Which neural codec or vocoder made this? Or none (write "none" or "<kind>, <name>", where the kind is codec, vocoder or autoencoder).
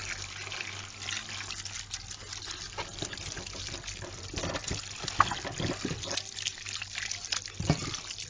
none